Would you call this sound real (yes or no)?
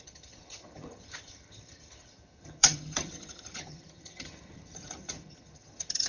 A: no